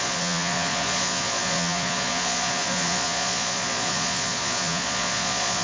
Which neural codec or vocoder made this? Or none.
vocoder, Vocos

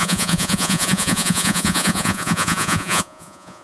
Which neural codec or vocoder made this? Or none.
vocoder, Vocos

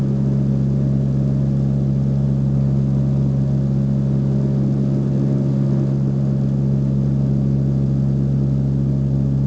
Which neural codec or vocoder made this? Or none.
none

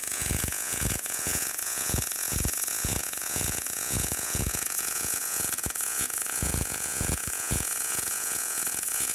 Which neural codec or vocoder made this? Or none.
vocoder, Vocos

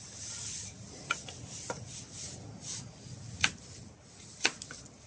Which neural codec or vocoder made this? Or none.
none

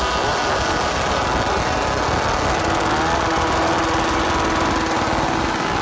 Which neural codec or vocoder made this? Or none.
none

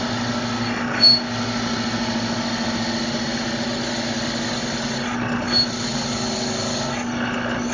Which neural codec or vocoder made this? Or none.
none